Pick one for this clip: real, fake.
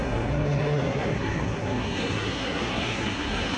fake